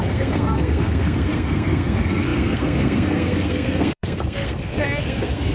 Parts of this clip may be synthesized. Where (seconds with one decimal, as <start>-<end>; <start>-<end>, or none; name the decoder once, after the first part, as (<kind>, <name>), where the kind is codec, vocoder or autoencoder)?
0.0-5.5 (codec, SNAC)